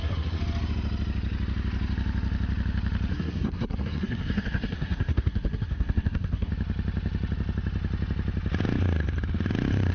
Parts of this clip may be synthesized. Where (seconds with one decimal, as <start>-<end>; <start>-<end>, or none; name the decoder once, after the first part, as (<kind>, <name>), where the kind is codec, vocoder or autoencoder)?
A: 0.0-0.4 (codec, SNAC); 3.1-6.5